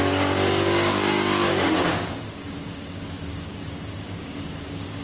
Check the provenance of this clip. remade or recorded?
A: remade